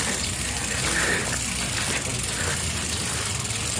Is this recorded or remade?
recorded